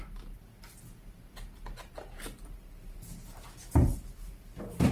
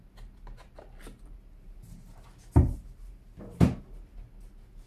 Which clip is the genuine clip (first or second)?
second